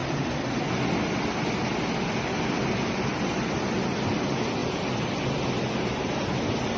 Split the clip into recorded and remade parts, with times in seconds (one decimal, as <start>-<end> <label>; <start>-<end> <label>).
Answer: 0.0-1.1 remade; 1.1-4.6 recorded; 4.6-5.1 remade; 5.1-6.8 recorded